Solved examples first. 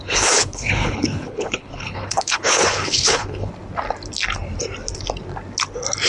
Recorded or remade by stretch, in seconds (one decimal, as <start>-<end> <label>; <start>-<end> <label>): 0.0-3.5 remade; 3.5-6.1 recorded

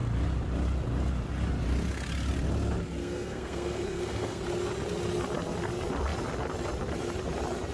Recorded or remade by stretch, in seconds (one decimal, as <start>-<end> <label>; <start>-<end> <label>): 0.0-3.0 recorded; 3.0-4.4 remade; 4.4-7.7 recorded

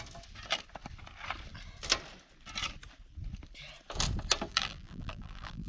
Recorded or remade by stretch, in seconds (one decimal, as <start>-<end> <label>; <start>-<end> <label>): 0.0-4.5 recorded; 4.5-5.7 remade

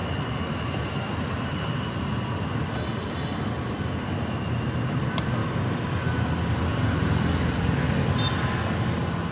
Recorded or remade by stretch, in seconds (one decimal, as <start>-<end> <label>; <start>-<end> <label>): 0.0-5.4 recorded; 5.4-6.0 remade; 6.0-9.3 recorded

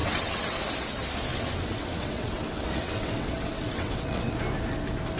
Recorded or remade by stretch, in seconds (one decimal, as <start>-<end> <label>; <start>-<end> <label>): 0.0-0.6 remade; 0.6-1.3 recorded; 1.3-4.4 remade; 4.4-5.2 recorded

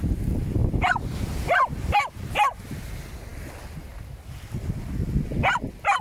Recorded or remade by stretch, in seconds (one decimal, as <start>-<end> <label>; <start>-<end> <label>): 0.0-0.6 recorded; 0.6-1.2 remade; 1.2-6.0 recorded

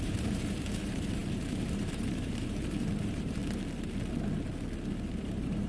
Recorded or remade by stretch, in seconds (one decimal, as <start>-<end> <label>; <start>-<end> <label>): 0.0-3.4 remade; 3.4-5.2 recorded; 5.2-5.7 remade

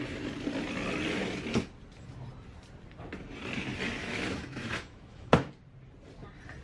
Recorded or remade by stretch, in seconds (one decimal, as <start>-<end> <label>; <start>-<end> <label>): 0.0-4.0 recorded; 4.0-5.5 remade; 5.5-6.6 recorded